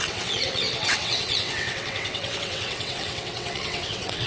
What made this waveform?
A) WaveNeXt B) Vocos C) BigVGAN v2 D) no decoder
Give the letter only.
A